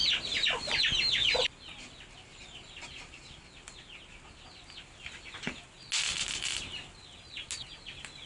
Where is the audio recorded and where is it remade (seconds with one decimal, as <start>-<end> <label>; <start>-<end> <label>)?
0.0-8.3 recorded